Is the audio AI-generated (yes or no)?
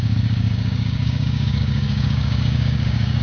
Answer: yes